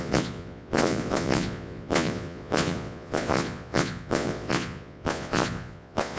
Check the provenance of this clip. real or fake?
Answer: fake